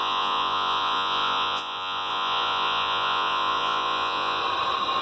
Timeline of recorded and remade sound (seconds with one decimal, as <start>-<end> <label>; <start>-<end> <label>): 0.0-4.4 remade; 4.4-5.0 recorded